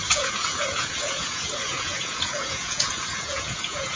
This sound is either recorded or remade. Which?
remade